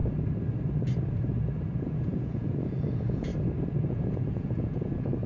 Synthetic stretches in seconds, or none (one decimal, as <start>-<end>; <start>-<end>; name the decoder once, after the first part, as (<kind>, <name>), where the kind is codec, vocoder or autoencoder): 1.8-3.3 (vocoder, Vocos); 3.9-5.3